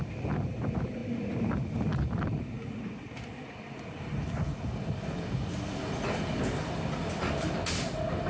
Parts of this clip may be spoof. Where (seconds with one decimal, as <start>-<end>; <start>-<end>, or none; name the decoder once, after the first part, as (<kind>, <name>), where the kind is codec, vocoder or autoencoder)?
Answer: none